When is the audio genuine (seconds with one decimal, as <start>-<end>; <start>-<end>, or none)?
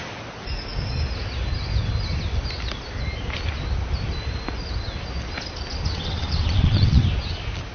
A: 0.0-5.9; 7.0-7.7